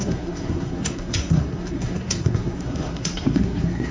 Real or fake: fake